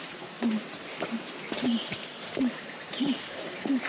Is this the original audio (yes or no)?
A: no